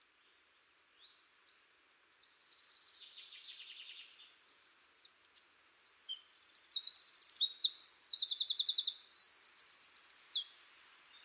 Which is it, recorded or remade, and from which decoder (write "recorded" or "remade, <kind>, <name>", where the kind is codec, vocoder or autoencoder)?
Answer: recorded